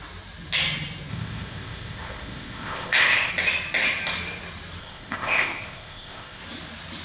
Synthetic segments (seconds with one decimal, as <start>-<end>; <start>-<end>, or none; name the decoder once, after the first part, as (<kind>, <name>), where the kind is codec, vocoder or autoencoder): 1.1-3.3 (codec, ZipCodec); 4.8-6.4